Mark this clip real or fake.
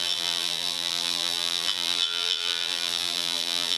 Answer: fake